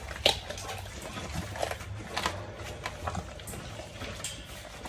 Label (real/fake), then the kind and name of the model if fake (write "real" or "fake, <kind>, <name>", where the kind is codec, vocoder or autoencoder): real